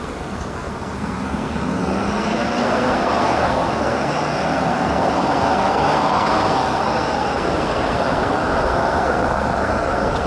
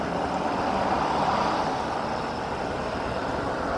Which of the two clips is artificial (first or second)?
first